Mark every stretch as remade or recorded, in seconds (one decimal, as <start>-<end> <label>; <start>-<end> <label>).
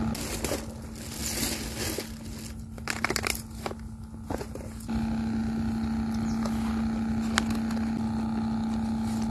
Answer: 0.0-9.3 recorded